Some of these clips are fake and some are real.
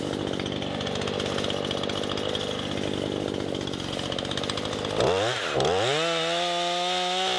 real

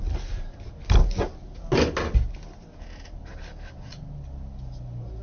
real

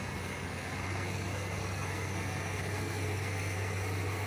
fake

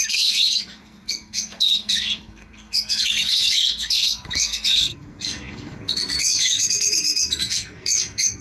fake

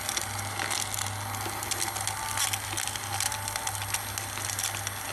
real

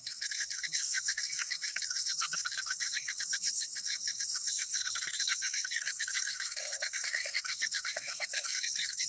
fake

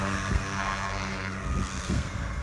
fake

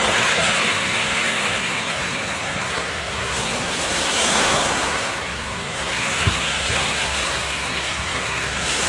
fake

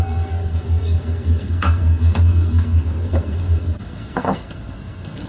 fake